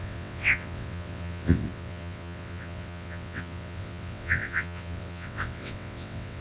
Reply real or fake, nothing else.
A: fake